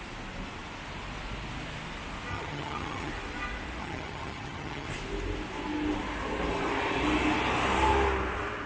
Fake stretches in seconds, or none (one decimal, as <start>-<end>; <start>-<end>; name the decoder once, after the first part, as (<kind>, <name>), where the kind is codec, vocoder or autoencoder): 2.3-3.1 (vocoder, HiFi-GAN); 3.8-4.9